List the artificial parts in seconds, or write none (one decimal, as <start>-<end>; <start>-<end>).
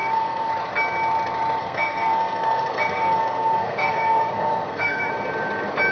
0.0-0.5; 1.6-5.1